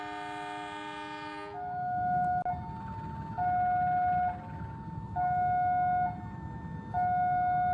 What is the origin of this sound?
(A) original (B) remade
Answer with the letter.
A